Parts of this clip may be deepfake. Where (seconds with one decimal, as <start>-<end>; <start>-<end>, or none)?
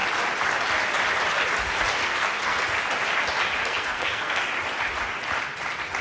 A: 2.0-2.6; 3.6-4.5